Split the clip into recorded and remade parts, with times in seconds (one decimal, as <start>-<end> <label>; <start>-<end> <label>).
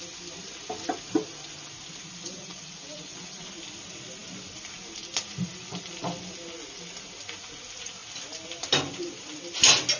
0.0-2.2 recorded; 2.2-3.6 remade; 3.6-10.0 recorded